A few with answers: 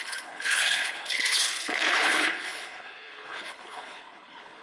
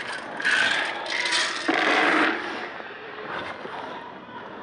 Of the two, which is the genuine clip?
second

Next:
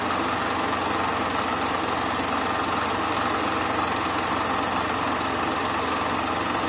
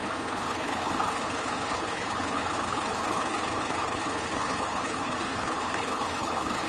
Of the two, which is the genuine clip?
first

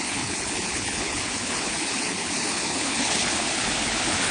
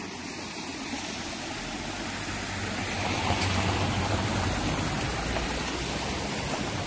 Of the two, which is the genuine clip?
second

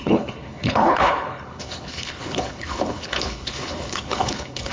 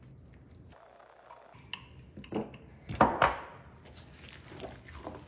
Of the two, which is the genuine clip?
second